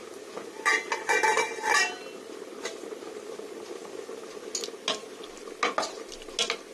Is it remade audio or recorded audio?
recorded